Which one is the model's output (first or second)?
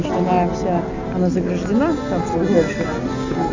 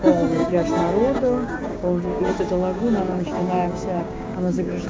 second